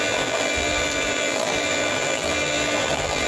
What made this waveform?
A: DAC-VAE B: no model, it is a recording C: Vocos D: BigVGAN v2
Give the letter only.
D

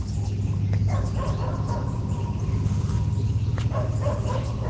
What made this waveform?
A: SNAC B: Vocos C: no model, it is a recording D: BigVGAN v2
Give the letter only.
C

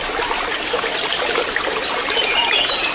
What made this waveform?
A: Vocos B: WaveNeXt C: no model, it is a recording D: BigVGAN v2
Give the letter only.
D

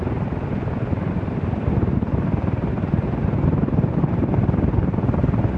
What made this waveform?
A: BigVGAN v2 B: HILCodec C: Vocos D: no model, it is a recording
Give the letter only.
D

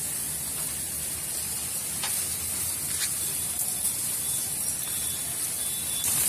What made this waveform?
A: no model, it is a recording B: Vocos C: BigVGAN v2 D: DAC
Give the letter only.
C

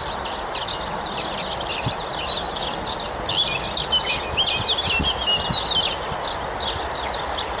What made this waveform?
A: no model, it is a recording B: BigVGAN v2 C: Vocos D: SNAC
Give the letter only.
A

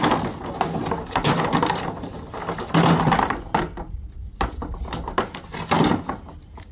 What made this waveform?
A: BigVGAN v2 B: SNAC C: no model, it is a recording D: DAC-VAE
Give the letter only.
C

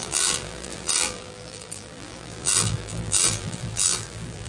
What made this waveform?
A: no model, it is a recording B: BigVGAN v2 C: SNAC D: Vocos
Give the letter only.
B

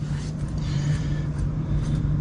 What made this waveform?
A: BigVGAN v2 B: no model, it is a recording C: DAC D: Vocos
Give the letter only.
A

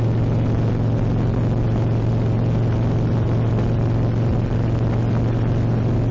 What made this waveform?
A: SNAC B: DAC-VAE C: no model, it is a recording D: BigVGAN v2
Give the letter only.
C